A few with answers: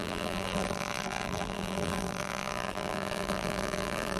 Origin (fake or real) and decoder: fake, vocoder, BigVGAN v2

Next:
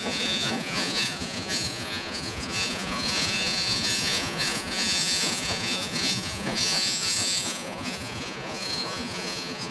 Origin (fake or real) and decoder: fake, vocoder, Vocos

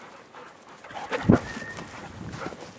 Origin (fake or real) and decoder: real